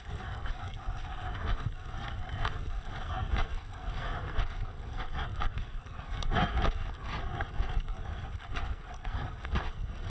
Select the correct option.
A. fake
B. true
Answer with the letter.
A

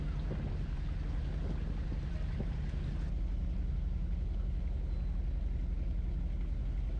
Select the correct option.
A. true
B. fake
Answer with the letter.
A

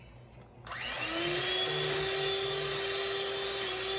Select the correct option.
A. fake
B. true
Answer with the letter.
B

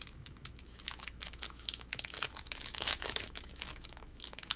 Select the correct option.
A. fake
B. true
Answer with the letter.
A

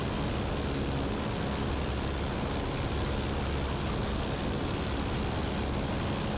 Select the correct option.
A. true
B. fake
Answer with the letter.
A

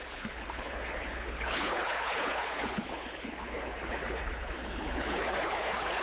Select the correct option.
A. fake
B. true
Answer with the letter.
A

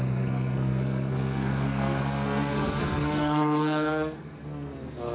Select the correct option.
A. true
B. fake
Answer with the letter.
B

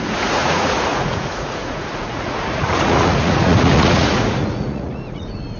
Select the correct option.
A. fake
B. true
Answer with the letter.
A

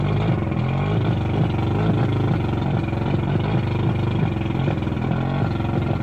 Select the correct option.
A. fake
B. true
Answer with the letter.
B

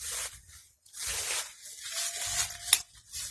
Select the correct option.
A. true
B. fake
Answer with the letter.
A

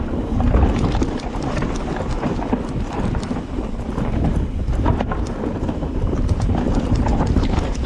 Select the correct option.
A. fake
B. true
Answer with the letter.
A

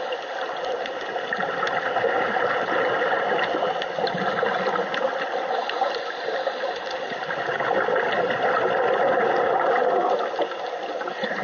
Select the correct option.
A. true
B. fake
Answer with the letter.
A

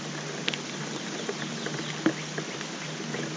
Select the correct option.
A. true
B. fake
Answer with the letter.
A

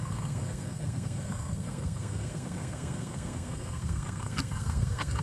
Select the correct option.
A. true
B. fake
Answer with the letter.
B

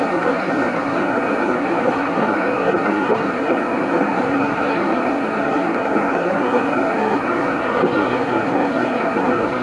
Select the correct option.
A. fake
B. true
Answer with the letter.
A